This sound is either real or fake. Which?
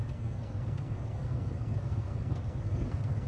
fake